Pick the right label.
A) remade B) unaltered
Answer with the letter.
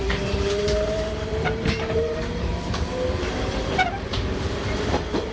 A